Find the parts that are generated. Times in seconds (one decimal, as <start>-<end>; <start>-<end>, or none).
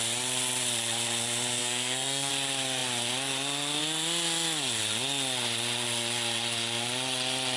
1.6-2.3